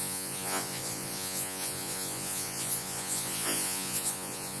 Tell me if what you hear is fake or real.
fake